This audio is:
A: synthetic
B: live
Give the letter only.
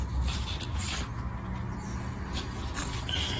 B